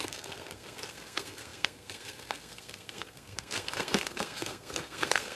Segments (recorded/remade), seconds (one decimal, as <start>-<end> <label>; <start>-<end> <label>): 0.0-5.4 remade